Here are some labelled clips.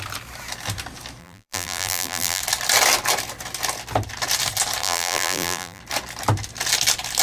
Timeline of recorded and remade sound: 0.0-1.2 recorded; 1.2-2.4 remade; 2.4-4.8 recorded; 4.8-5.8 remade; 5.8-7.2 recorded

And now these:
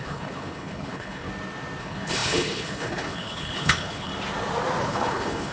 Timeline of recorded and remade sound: 0.0-1.3 remade; 1.3-1.8 recorded; 1.8-4.1 remade; 4.1-4.8 recorded; 4.8-5.5 remade